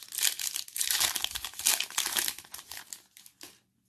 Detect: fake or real real